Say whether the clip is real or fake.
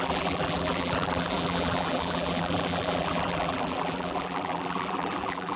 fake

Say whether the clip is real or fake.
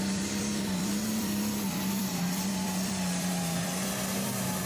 fake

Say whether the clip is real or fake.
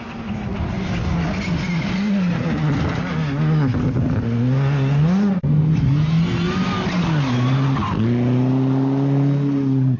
real